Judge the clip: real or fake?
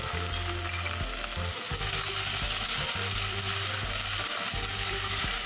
real